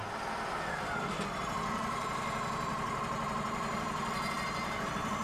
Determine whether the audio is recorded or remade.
remade